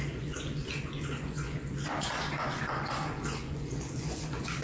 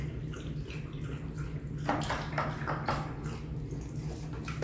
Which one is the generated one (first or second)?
first